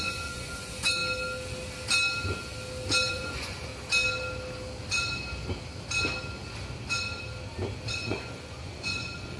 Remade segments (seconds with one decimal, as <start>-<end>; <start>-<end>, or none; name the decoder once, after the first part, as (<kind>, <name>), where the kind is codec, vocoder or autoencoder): 0.0-1.0 (vocoder, Vocos); 3.1-3.7; 7.9-9.4